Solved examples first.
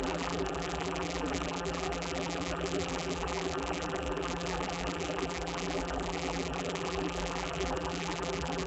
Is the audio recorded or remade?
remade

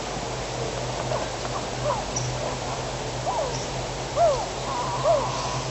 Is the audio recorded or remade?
recorded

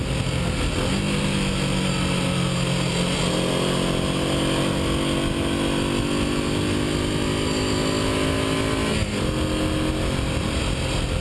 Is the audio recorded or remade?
recorded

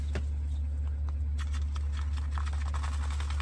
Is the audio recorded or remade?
recorded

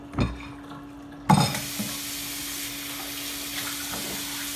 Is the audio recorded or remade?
recorded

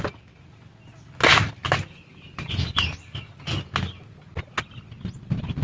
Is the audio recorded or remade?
recorded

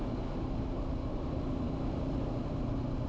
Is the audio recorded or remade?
recorded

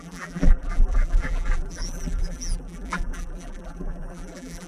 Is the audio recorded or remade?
remade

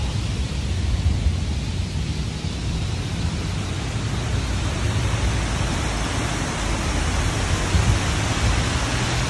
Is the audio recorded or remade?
recorded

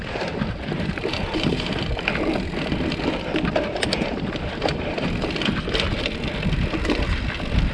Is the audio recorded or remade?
remade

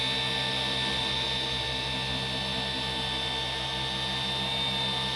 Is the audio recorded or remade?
recorded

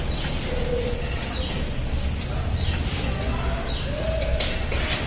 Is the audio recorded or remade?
recorded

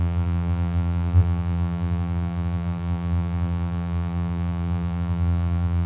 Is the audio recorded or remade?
remade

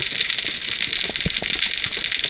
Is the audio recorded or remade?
recorded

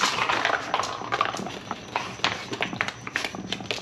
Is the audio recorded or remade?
recorded